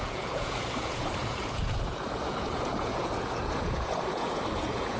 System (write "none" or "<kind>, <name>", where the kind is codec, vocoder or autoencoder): vocoder, Vocos